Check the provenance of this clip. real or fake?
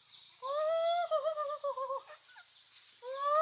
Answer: real